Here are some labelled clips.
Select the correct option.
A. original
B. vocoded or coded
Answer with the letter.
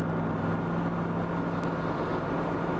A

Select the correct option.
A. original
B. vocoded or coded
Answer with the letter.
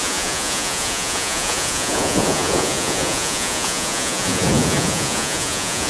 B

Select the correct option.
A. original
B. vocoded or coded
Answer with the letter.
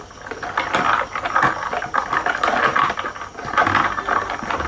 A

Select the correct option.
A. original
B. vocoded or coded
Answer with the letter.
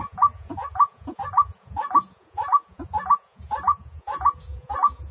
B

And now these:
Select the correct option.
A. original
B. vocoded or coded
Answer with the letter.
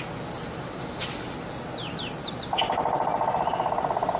A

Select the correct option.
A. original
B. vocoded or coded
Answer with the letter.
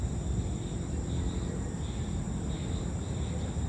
A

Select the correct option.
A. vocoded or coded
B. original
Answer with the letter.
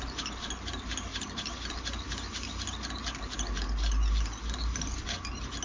B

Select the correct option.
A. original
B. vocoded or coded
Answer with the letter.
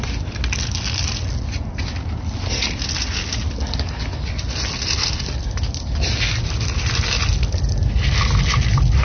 A